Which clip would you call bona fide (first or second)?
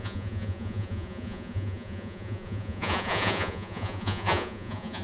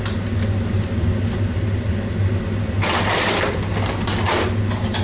second